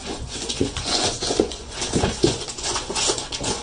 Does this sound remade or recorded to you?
remade